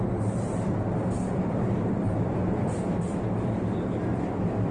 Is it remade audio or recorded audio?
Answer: remade